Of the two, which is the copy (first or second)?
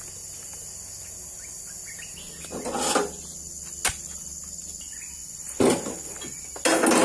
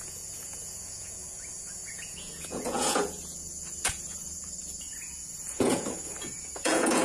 second